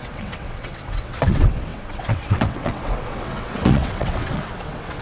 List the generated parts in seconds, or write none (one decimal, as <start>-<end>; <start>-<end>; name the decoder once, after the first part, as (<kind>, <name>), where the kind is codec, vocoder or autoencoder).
0.0-5.0 (vocoder, WaveNeXt)

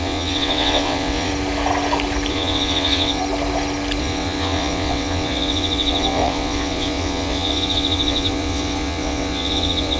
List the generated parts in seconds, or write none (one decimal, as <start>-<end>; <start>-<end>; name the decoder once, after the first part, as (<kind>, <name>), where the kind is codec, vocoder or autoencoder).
0.0-1.3 (vocoder, WaveNeXt); 2.3-3.2; 4.0-10.0

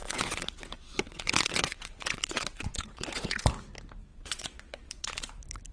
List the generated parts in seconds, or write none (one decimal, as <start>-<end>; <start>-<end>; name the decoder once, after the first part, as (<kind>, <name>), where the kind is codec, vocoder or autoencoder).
0.0-3.4 (vocoder, WaveNeXt); 4.1-5.3

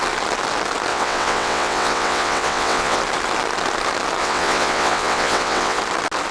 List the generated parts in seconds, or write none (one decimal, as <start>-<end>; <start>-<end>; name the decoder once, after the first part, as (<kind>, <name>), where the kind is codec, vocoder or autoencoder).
0.9-3.0 (vocoder, WaveNeXt); 4.2-5.8

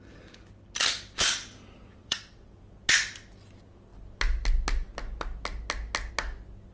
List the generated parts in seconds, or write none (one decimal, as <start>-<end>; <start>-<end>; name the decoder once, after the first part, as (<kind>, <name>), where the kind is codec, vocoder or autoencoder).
1.9-2.6 (vocoder, WaveNeXt)